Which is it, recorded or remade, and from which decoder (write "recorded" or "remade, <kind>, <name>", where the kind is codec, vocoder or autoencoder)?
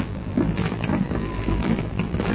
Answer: remade, vocoder, BigVGAN v2